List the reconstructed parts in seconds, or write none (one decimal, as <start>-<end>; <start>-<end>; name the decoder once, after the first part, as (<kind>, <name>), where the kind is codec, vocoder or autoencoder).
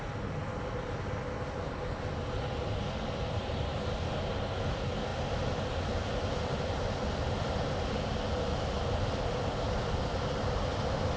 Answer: 5.1-6.8 (vocoder, BigVGAN v2)